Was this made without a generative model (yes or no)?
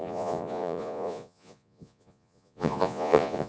no